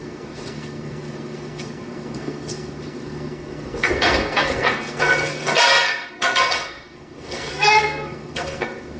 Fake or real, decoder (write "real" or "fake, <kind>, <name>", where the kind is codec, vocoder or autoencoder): fake, codec, SNAC